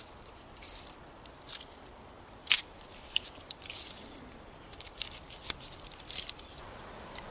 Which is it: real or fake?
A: fake